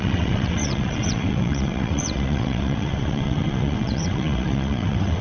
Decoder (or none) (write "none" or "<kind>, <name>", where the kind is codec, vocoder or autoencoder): vocoder, WaveNeXt